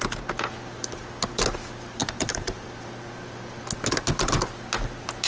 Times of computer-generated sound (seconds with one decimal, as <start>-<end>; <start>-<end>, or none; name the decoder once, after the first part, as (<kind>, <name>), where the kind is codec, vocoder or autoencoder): 2.0-3.0 (vocoder, BigVGAN v2)